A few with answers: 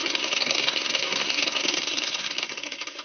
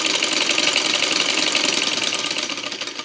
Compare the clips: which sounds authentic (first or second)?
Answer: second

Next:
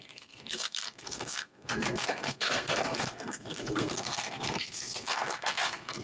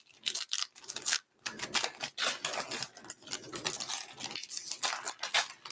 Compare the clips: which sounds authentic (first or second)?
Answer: second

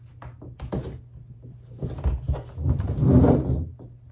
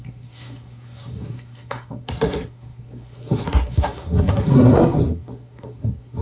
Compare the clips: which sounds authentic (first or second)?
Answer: first